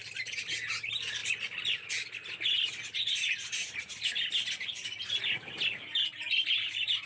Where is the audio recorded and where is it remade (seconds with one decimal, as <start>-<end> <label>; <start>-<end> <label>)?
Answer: 0.0-7.1 recorded